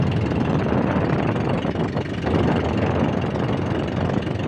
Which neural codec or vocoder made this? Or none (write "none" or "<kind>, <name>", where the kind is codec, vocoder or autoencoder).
none